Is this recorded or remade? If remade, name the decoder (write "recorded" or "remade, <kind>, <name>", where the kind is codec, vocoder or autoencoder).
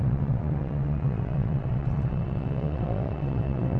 remade, vocoder, WaveNeXt